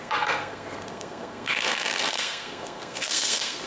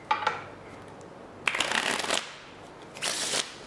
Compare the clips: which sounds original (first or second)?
second